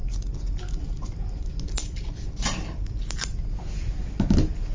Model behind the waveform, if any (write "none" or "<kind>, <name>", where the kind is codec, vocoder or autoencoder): none